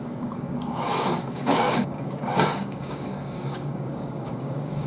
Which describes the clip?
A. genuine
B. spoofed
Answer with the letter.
B